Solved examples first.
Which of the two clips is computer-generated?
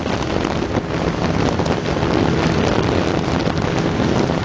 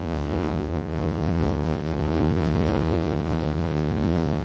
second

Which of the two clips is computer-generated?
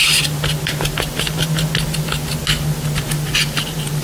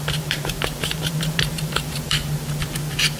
second